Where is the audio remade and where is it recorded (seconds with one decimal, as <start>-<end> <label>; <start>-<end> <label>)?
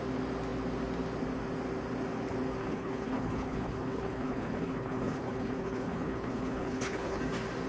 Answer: 0.0-2.6 recorded; 2.6-7.2 remade; 7.2-7.7 recorded